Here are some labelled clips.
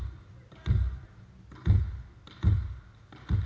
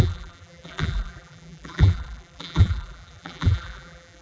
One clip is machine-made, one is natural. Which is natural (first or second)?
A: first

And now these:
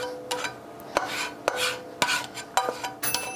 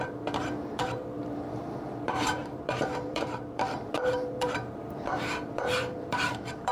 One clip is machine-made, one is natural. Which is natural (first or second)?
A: first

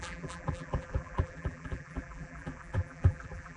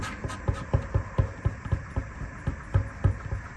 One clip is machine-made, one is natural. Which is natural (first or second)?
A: second